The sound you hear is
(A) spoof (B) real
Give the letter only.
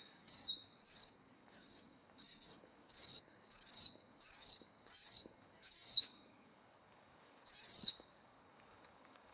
A